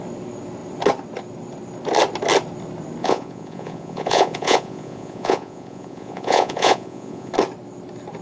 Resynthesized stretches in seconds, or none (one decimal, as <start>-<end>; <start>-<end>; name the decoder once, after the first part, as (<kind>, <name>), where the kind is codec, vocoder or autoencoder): 3.0-7.3 (vocoder, Vocos)